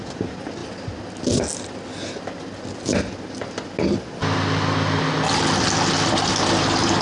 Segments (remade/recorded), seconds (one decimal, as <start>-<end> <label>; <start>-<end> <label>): 0.0-7.0 recorded